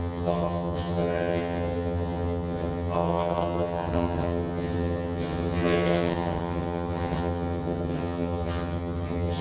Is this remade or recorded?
remade